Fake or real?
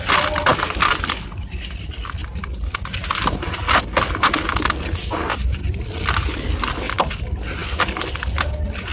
real